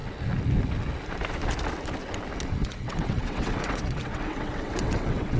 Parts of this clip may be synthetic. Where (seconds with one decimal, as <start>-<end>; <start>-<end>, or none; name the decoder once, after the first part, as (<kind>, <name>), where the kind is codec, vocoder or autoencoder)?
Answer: 2.6-5.4 (vocoder, WaveNeXt)

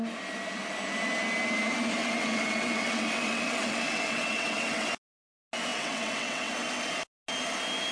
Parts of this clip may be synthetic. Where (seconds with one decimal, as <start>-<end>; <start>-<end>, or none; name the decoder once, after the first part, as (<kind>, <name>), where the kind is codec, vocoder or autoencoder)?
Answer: 2.0-4.9 (vocoder, WaveNeXt); 5.7-6.5

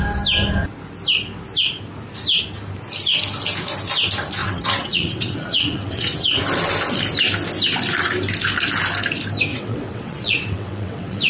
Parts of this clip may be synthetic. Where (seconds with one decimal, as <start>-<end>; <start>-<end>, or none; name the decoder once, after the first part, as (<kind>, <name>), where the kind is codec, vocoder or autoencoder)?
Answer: 4.4-6.4 (vocoder, WaveNeXt); 9.5-11.3

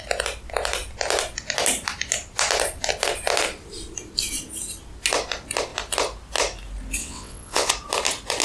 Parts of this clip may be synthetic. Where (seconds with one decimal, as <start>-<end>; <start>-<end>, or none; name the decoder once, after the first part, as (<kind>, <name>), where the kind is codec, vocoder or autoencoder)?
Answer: 7.0-7.7 (vocoder, WaveNeXt)

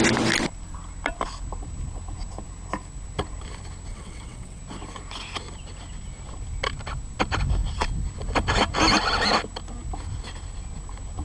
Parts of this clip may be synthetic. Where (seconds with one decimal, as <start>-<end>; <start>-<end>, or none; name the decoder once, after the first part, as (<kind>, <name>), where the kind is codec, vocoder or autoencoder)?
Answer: 3.9-4.6 (vocoder, WaveNeXt)

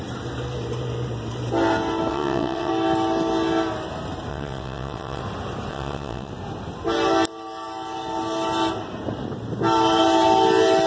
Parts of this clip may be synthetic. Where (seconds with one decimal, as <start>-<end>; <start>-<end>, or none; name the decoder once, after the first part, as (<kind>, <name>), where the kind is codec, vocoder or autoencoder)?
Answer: 2.1-2.7 (vocoder, WaveNeXt); 4.3-5.2; 5.7-6.3